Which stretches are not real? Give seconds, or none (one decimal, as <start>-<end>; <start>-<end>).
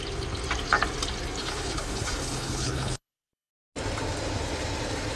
1.4-3.5